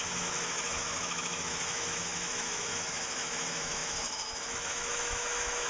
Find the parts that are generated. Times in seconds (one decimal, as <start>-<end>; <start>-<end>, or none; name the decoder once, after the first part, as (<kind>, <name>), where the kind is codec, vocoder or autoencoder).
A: 0.0-5.7 (autoencoder, DAC-VAE)